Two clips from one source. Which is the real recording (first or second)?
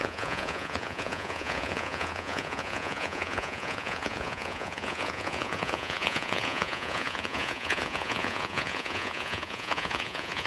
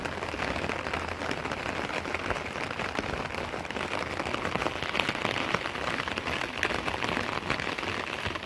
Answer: second